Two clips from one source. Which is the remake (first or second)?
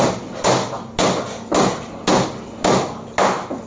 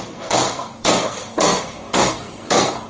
second